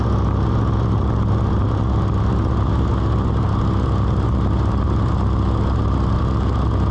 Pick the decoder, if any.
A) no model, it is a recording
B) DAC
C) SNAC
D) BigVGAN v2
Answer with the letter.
A